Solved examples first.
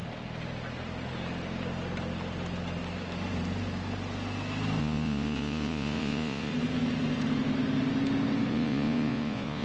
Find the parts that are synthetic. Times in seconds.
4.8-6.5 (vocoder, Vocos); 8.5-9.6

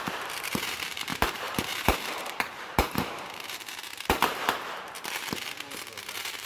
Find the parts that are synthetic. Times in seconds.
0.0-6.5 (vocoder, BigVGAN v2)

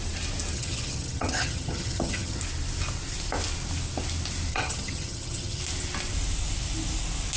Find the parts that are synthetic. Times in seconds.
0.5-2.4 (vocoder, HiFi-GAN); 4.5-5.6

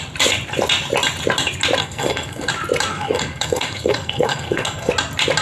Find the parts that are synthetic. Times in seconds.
1.8-2.5 (codec, SNAC); 2.9-4.9

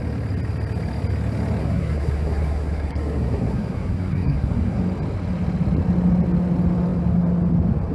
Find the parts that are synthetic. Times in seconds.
1.6-4.8 (codec, SNAC)

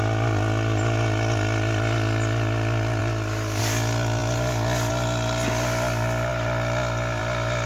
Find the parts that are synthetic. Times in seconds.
none

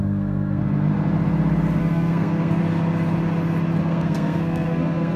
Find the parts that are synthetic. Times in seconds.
0.0-0.6 (codec, SNAC); 1.8-2.6; 3.8-5.2

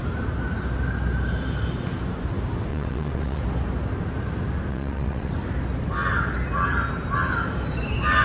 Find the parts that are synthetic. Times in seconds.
2.7-3.4 (vocoder, WaveNeXt); 4.7-5.3